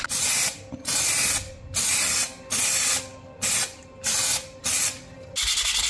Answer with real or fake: real